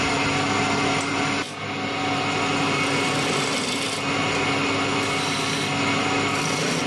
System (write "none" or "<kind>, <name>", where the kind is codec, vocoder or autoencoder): none